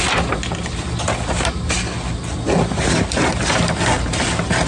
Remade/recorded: recorded